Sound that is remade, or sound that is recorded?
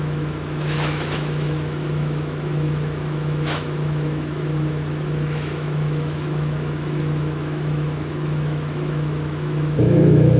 remade